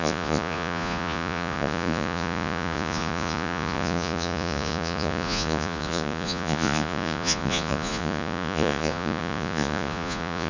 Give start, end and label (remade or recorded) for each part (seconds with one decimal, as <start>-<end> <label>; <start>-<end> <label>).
0.0-10.5 remade